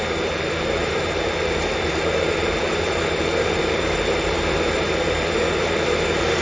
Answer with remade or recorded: remade